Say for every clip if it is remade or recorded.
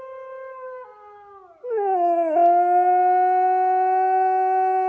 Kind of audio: recorded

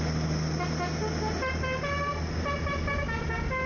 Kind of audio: recorded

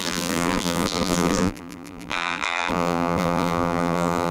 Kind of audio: remade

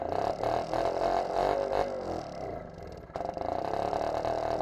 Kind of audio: recorded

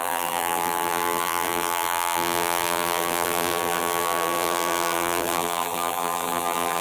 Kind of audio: remade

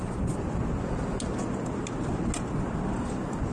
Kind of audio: recorded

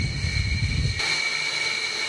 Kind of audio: recorded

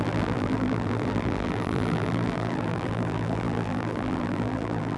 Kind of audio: remade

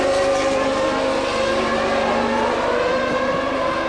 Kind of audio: recorded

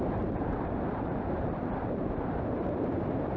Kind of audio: remade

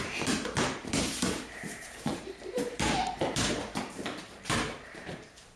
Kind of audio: remade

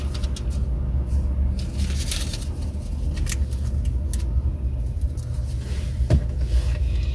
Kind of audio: recorded